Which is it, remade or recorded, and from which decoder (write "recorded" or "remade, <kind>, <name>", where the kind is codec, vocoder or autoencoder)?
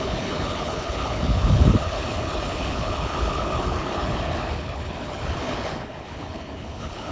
remade, codec, HILCodec